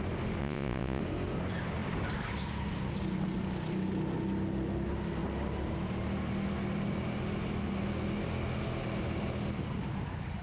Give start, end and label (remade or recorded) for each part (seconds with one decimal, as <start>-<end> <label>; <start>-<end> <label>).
0.0-0.4 recorded; 0.4-1.0 remade; 1.0-10.4 recorded